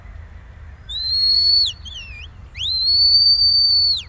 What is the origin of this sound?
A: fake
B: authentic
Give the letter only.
A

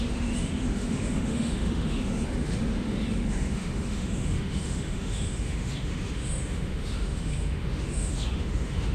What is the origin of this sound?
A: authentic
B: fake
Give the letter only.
B